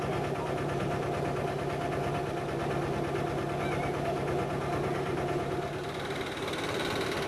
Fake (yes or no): no